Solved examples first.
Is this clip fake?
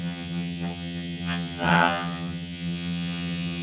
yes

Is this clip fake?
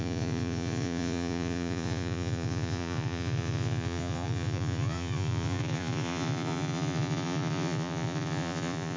yes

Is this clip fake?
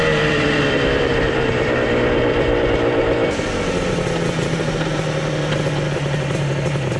yes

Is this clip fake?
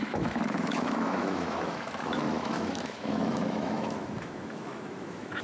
yes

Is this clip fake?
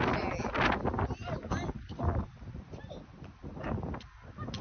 no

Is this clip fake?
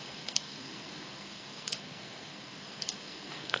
yes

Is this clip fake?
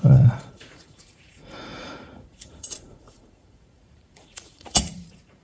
yes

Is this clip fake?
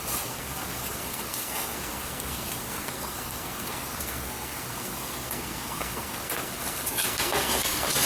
yes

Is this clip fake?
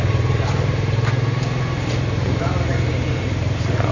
yes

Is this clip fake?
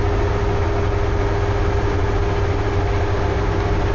no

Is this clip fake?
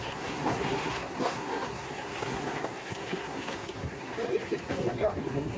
yes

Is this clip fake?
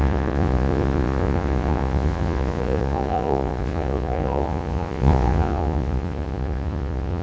yes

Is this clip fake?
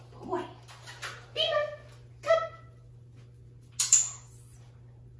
no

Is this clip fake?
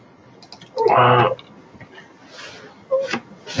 no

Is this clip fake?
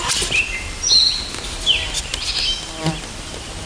no